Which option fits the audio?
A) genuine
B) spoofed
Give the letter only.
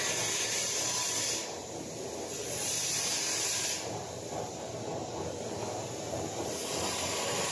B